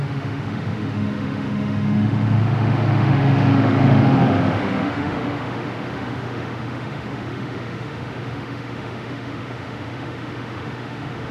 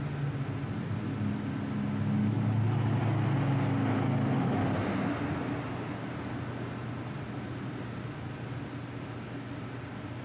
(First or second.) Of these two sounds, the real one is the second